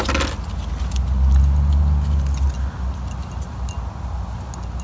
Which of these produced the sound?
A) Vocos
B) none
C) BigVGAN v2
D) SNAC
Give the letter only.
B